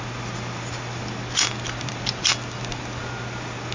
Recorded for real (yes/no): yes